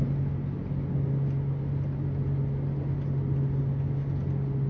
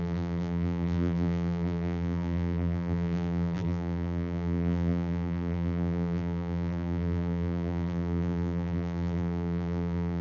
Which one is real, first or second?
first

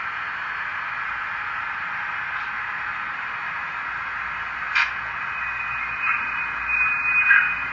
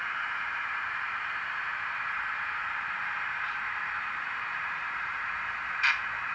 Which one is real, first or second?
first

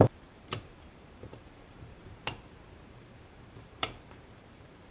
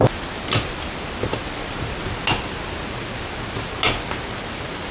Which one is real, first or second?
second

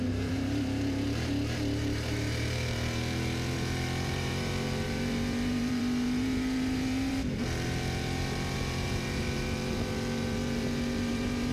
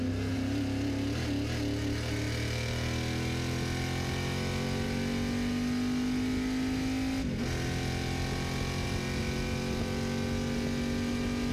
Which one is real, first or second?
second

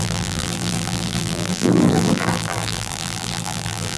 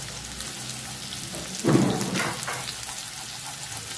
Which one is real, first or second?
second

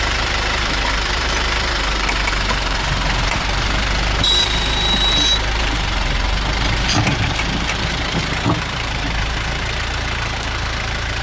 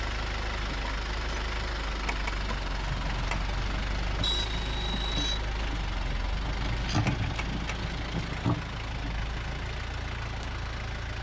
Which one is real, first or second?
second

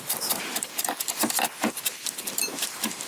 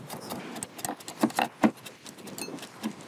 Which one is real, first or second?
second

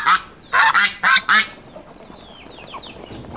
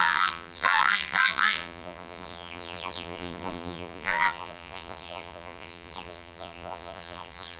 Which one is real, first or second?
first